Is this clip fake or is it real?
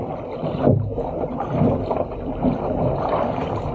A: real